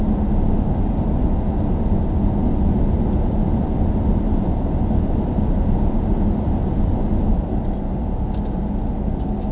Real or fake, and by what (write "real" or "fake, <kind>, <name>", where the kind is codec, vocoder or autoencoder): real